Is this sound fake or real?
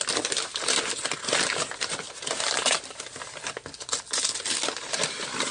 real